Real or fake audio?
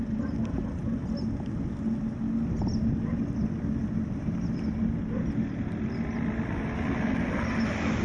real